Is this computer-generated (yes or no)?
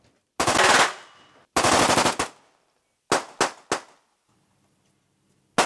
no